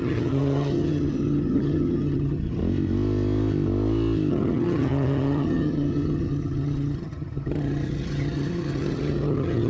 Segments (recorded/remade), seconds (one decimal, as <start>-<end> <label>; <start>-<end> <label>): 0.0-2.6 remade; 2.6-4.3 recorded; 4.3-9.7 remade